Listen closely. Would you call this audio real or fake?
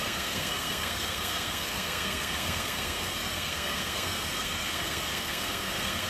fake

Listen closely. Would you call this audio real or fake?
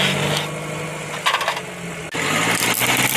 real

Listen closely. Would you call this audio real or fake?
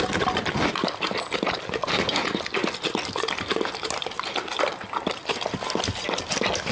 real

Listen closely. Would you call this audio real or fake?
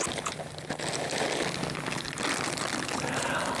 real